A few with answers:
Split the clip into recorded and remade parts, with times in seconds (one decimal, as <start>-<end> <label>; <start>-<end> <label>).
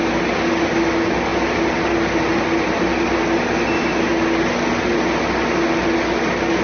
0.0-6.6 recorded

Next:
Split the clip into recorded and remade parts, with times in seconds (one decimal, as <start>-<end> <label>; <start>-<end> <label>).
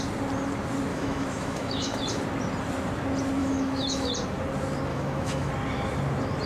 0.0-0.9 recorded; 0.9-2.0 remade; 2.0-3.4 recorded; 3.4-4.1 remade; 4.1-4.9 recorded; 4.9-5.5 remade; 5.5-6.5 recorded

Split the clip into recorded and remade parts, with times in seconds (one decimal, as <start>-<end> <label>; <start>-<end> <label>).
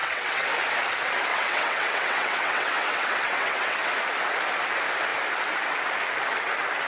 0.0-0.5 remade; 0.5-1.3 recorded; 1.3-3.9 remade; 3.9-6.9 recorded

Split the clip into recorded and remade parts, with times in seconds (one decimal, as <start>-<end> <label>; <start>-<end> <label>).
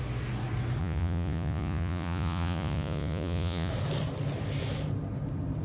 0.0-0.8 recorded; 0.8-3.7 remade; 3.7-5.6 recorded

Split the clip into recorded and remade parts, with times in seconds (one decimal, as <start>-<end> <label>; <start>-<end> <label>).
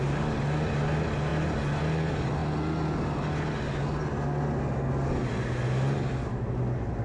0.0-7.0 recorded